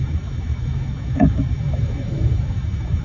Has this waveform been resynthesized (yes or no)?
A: yes